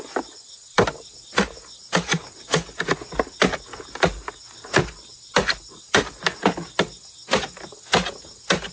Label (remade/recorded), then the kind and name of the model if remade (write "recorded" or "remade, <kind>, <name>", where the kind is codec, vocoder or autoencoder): recorded